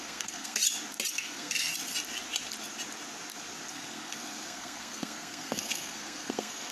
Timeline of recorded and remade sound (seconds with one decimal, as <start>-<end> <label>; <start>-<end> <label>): 0.0-0.6 remade; 0.6-1.1 recorded; 1.1-1.7 remade; 1.7-3.7 recorded; 3.7-6.7 remade